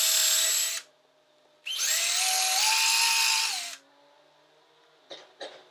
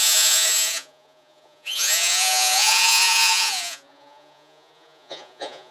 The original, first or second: first